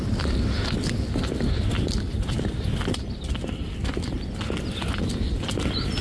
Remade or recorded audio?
recorded